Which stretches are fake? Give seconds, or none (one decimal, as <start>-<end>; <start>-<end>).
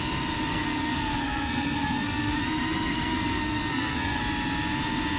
0.5-2.4; 2.9-4.2